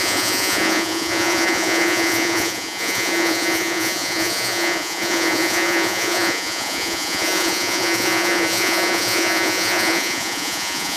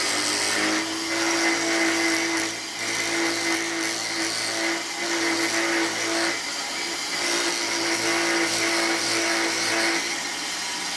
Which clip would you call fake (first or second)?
first